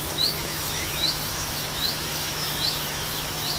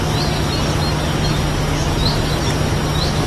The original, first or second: second